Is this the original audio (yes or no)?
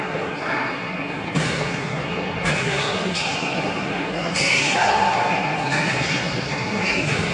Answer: no